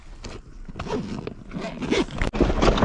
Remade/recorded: recorded